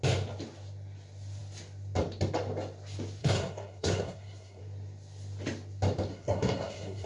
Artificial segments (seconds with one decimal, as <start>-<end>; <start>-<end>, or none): 3.2-4.6; 6.1-7.1